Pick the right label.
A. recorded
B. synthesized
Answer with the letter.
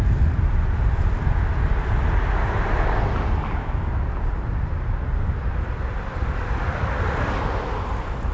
A